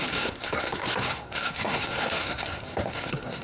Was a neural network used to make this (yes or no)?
yes